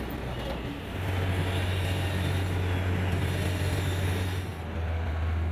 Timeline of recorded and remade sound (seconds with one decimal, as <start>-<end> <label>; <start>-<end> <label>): 0.0-5.5 recorded